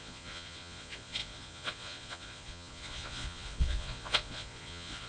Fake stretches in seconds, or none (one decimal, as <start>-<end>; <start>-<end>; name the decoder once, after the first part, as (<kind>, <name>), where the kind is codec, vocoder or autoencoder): 0.0-5.1 (vocoder, Vocos)